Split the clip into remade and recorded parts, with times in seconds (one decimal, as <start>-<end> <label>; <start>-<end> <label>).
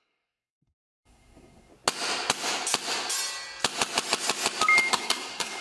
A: 0.0-1.7 remade; 1.7-4.9 recorded; 4.9-5.6 remade